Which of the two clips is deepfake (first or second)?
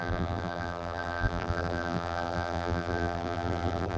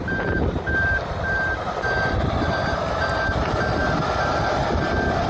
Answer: first